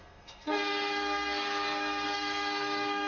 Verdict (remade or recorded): remade